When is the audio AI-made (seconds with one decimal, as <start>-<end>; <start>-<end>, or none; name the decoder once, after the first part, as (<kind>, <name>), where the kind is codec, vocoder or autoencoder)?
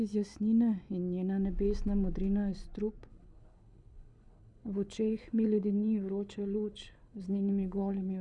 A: 3.1-8.2 (codec, HILCodec)